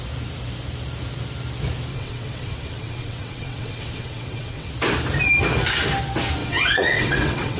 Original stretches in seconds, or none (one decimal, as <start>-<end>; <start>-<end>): 0.0-1.9; 4.7-6.4